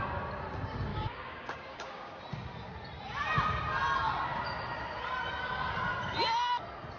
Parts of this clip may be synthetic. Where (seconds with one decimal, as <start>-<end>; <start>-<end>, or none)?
0.9-2.2